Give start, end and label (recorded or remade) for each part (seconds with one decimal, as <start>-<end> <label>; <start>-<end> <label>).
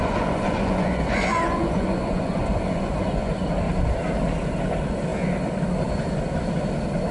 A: 0.0-3.3 remade; 3.3-7.1 recorded